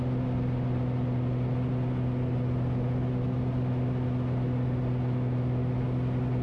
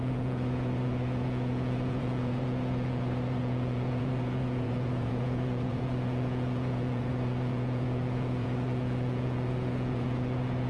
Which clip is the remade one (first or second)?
second